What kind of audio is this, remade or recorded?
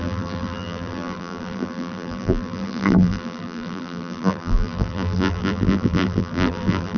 remade